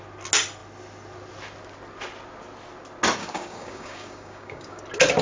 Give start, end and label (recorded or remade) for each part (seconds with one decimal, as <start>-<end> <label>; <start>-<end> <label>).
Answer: 0.0-3.2 recorded; 3.2-4.8 remade; 4.8-5.2 recorded